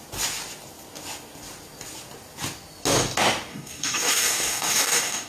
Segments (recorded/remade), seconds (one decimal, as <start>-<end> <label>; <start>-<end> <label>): 0.0-3.5 recorded; 3.5-5.3 remade

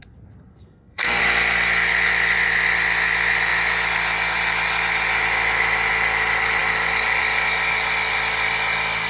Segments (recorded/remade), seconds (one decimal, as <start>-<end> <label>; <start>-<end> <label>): 0.0-0.5 recorded; 0.5-1.2 remade; 1.2-9.1 recorded

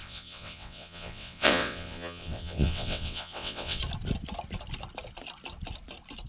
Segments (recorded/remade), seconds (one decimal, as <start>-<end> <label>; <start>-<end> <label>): 0.0-3.8 remade; 3.8-6.3 recorded

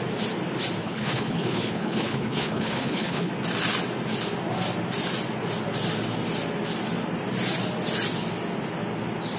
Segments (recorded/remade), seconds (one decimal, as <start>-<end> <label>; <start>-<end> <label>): 0.0-0.8 recorded; 0.8-3.3 remade; 3.3-9.4 recorded